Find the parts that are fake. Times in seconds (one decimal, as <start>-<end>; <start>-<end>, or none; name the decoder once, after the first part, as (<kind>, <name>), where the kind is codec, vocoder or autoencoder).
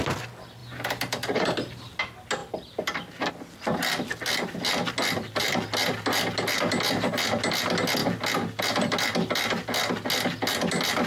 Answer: 0.6-2.0 (vocoder, BigVGAN v2); 2.4-3.3